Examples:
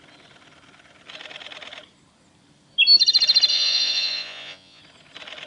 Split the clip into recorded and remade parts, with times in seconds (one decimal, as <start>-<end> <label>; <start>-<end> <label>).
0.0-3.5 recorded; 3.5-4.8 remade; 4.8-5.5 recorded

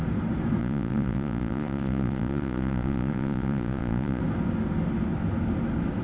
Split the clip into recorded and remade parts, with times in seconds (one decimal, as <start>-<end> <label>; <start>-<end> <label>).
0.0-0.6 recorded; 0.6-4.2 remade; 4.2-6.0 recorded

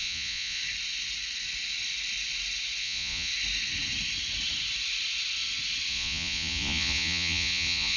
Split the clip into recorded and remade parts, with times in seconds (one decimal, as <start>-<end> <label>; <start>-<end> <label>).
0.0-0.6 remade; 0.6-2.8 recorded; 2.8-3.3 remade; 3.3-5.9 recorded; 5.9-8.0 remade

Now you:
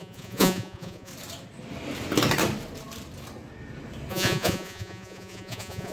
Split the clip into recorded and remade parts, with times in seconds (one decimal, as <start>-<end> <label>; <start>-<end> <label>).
0.0-1.1 remade; 1.1-4.1 recorded; 4.1-5.9 remade